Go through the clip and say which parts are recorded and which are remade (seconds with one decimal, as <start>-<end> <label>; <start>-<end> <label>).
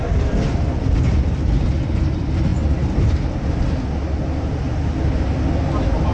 0.0-6.1 recorded